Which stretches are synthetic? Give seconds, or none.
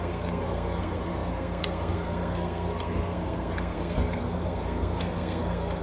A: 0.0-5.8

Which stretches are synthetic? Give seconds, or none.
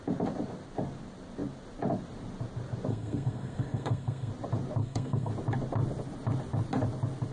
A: 2.9-4.3; 4.8-5.3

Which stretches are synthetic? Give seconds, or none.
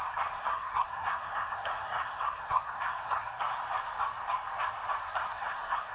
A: 0.0-3.5; 5.0-5.9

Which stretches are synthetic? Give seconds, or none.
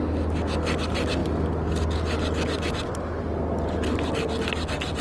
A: none